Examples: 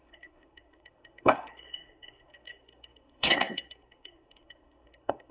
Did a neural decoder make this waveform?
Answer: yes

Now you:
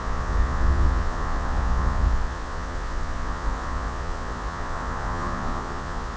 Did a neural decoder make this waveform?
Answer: yes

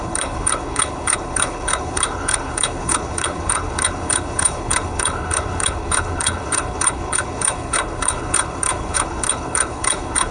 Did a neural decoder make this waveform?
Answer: yes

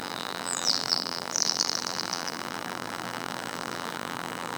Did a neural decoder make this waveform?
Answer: yes